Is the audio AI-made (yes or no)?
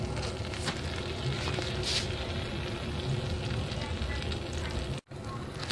no